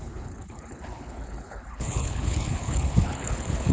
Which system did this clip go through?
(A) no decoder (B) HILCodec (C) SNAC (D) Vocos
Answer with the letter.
B